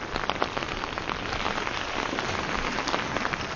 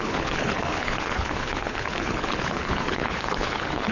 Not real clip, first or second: second